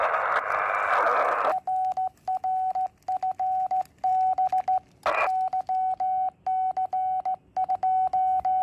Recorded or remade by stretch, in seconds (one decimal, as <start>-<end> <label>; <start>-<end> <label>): 0.0-8.6 recorded